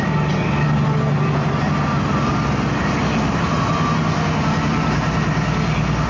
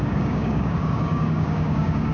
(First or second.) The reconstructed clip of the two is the second